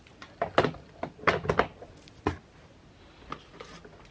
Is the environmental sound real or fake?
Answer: real